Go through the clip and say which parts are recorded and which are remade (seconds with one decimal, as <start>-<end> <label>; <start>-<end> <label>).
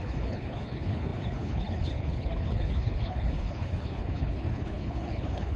0.0-5.6 remade